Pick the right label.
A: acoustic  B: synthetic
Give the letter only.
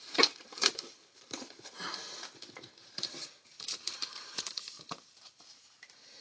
B